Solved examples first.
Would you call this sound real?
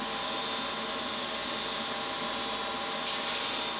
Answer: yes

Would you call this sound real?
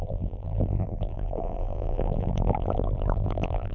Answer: no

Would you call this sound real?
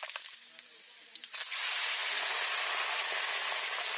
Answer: yes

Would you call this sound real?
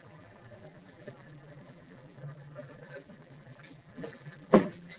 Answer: no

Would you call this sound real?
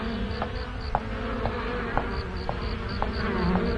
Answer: yes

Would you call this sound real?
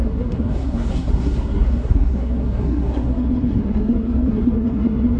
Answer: no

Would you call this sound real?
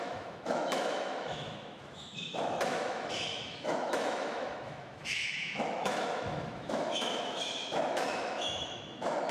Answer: no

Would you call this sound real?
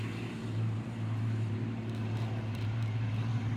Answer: no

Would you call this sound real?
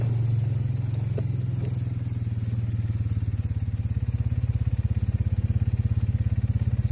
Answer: yes